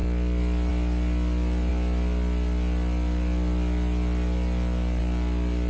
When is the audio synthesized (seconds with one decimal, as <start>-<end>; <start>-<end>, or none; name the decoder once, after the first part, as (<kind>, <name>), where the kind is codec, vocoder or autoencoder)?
none